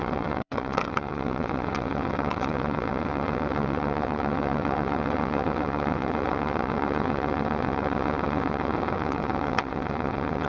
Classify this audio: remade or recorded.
remade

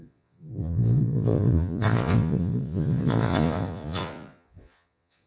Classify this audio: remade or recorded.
remade